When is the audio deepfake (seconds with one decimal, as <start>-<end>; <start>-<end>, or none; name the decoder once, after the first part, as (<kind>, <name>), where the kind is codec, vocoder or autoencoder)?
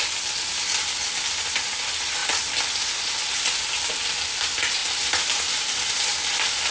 4.8-6.0 (vocoder, BigVGAN v2)